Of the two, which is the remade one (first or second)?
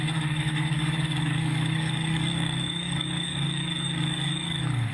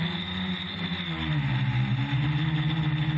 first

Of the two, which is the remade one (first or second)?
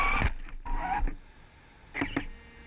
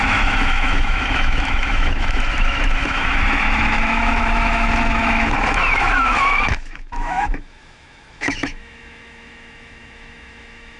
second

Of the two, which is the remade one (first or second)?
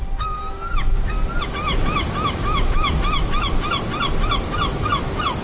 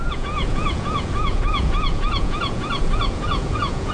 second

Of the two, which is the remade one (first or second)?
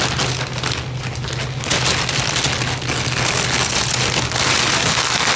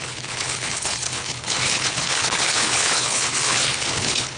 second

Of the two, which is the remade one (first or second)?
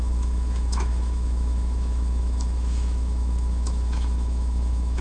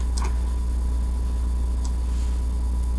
first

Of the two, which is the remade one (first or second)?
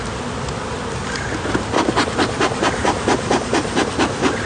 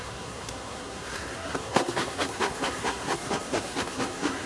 second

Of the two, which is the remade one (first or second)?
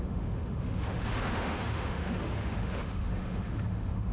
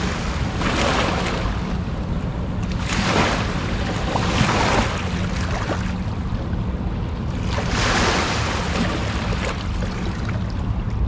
first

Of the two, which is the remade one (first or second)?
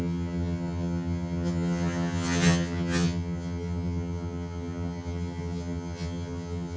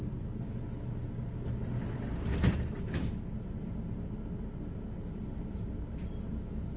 first